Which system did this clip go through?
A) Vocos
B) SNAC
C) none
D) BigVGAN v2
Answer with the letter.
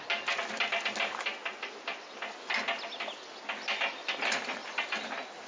C